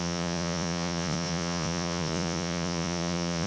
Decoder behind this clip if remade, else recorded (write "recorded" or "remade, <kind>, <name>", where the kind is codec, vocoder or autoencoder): remade, vocoder, Vocos